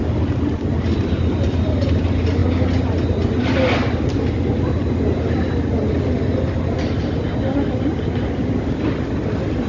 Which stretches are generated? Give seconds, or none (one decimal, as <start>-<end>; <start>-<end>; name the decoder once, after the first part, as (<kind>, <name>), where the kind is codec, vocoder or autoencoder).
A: none